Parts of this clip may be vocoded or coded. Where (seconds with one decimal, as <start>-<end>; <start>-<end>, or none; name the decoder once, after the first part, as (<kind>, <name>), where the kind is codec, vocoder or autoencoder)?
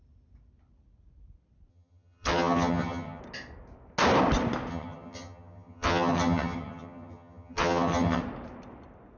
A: 1.7-3.2 (vocoder, HiFi-GAN); 4.7-8.2